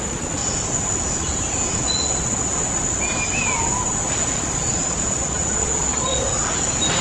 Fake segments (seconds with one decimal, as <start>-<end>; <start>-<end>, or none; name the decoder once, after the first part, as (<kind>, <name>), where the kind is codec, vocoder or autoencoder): 0.0-0.4 (vocoder, Vocos); 1.8-2.6; 4.3-6.3

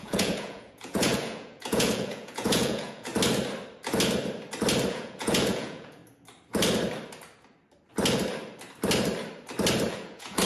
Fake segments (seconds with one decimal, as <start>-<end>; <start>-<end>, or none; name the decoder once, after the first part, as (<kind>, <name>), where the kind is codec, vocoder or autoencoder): 0.0-3.1 (vocoder, Vocos); 4.9-6.0; 9.9-10.5

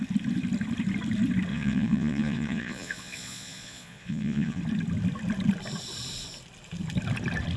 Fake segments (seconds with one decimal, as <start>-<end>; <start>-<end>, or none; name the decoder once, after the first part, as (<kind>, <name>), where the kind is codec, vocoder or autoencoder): 1.5-4.6 (vocoder, Vocos)

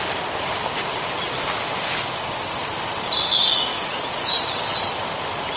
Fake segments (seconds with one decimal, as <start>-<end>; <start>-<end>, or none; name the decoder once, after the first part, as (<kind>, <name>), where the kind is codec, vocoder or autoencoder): 3.7-4.4 (vocoder, Vocos)

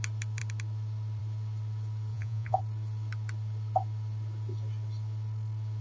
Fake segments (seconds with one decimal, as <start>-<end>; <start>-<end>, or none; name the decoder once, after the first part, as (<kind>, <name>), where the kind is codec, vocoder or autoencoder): 2.1-2.6 (vocoder, Vocos)

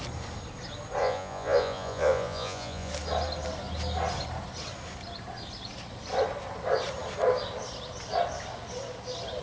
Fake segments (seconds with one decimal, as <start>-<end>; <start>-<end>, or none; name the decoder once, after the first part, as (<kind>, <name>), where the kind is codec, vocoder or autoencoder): 1.0-2.9 (vocoder, Vocos)